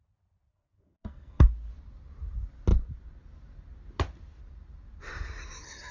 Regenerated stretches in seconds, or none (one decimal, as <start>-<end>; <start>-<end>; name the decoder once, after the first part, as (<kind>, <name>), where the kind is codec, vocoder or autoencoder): 0.5-1.5 (codec, SNAC)